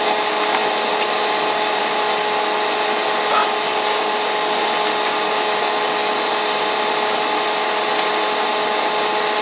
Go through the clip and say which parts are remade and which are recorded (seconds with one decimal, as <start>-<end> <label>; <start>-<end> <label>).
0.0-9.4 recorded